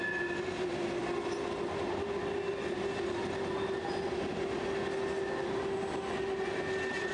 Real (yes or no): yes